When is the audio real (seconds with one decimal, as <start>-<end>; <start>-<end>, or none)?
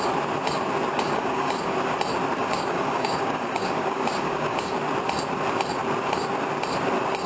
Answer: 0.0-0.9; 1.7-2.4; 4.7-7.3